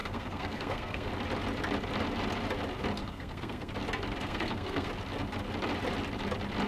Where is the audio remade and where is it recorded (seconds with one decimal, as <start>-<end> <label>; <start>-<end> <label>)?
0.0-1.1 remade; 1.1-3.0 recorded; 3.0-3.7 remade; 3.7-4.2 recorded; 4.2-4.9 remade; 4.9-6.7 recorded